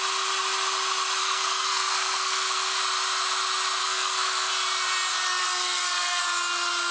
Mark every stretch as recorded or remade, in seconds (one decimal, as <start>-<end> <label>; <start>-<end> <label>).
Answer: 0.0-1.2 recorded; 1.2-2.8 remade; 2.8-3.8 recorded; 3.8-4.5 remade; 4.5-5.4 recorded; 5.4-6.2 remade; 6.2-6.9 recorded